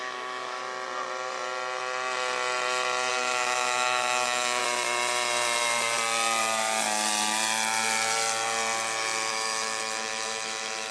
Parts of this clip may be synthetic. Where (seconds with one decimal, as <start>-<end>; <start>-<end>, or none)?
0.0-0.6; 3.1-4.6; 9.3-10.9